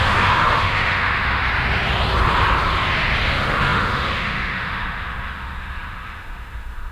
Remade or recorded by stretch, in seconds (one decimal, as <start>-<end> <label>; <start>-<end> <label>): 0.0-1.4 remade; 1.4-3.3 recorded; 3.3-6.9 remade